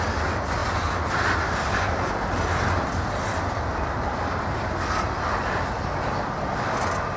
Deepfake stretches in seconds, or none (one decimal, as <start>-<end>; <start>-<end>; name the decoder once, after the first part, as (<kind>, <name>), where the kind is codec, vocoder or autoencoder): none